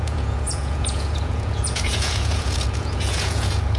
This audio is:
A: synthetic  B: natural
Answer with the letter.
A